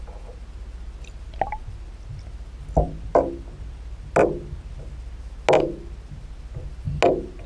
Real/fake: real